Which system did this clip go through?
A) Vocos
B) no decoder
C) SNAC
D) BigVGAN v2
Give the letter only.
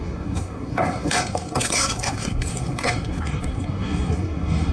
C